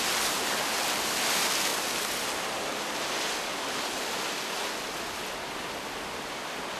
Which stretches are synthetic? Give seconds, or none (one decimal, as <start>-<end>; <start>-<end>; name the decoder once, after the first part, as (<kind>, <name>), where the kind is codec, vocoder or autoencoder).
none